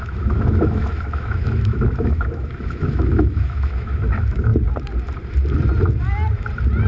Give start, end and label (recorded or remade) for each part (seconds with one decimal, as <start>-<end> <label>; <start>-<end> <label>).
0.0-4.5 remade; 4.5-6.9 recorded